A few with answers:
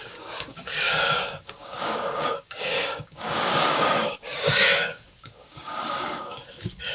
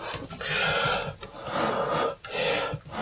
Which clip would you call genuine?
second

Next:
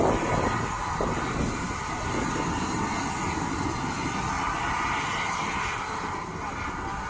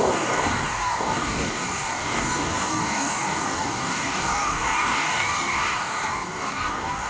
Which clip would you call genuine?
first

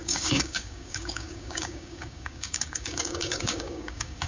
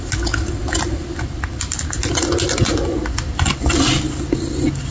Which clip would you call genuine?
second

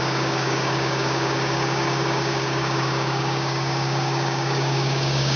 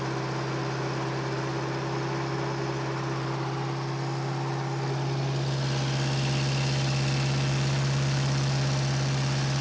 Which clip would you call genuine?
second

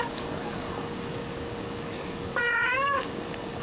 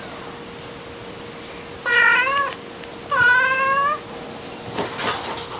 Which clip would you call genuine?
second